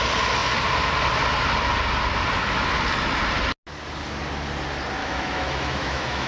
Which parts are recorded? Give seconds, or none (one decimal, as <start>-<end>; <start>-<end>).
0.0-5.0